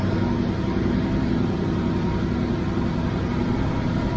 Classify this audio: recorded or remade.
recorded